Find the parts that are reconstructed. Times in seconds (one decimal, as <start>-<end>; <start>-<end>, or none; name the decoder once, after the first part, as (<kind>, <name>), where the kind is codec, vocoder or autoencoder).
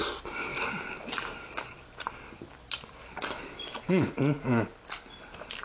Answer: none